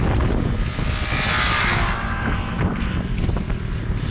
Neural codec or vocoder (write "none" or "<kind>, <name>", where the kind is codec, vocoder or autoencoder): none